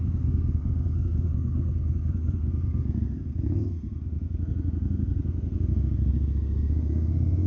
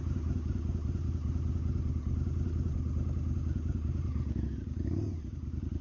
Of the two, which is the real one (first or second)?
second